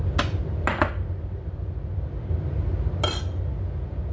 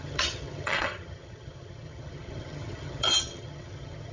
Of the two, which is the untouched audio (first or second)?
first